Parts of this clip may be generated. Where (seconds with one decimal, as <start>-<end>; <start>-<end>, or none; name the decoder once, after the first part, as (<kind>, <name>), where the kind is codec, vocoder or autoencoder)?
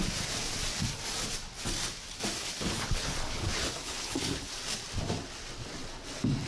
2.4-4.5 (codec, HILCodec)